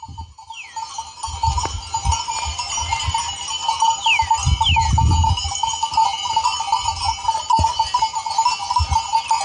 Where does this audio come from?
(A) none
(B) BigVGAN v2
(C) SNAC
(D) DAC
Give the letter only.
A